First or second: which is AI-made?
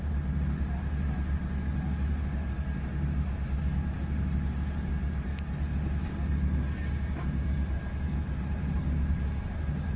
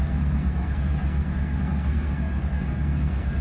second